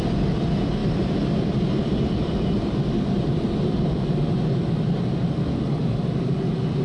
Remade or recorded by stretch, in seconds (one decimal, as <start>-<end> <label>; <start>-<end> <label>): 0.0-0.8 recorded; 0.8-4.5 remade; 4.5-6.8 recorded